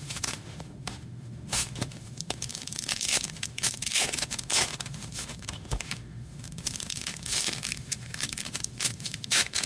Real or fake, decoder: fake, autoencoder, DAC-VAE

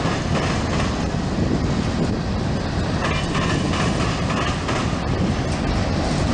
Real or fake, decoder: real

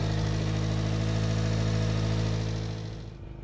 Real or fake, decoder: real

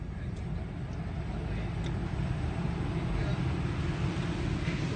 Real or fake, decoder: real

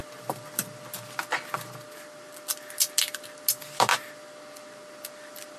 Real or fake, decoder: real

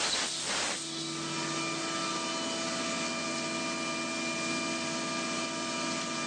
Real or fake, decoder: real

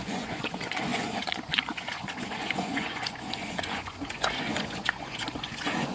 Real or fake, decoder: fake, vocoder, Vocos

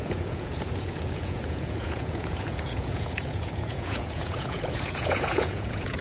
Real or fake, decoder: fake, vocoder, Vocos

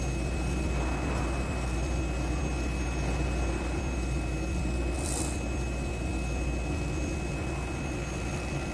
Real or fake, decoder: real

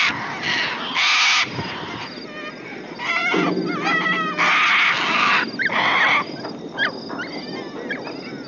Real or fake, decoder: real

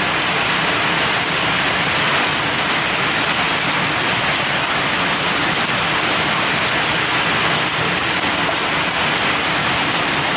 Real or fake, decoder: real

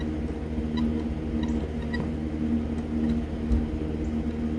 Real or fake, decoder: real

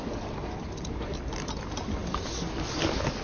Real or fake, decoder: real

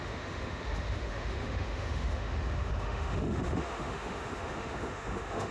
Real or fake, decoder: fake, autoencoder, DAC-VAE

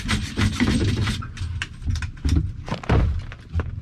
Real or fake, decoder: real